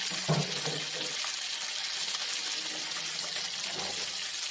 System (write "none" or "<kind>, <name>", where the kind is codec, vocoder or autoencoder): none